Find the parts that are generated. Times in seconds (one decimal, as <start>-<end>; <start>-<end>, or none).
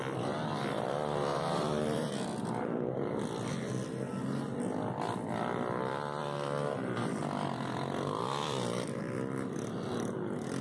1.3-3.5; 6.2-9.0